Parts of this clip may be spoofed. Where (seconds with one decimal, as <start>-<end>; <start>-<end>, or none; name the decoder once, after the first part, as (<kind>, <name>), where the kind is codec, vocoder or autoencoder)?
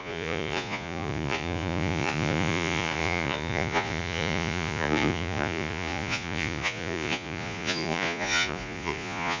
0.0-9.4 (vocoder, Vocos)